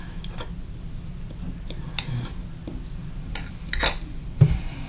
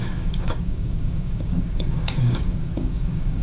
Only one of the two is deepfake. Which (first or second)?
second